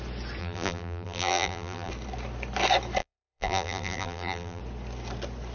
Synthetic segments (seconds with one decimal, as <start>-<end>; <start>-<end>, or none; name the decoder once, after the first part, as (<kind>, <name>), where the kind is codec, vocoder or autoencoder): 0.4-1.9 (vocoder, BigVGAN v2); 3.0-4.6